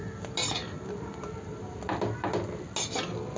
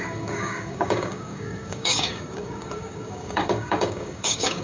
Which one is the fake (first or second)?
second